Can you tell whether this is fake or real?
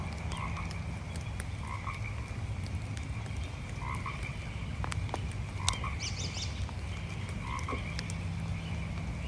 real